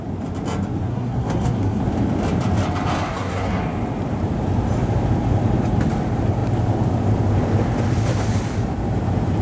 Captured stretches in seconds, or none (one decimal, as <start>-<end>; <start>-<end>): 0.0-0.9; 1.8-3.1; 3.6-9.4